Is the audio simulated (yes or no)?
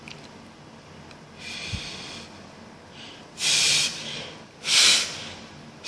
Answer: no